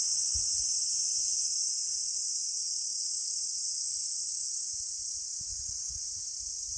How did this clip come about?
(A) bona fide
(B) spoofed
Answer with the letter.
A